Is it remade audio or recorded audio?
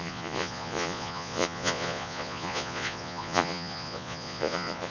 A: remade